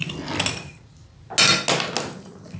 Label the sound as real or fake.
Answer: real